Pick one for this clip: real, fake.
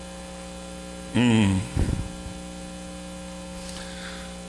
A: real